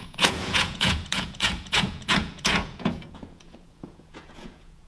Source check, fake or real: fake